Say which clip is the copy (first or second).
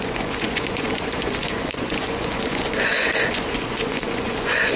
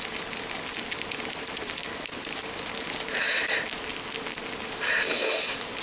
first